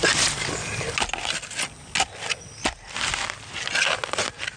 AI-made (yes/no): no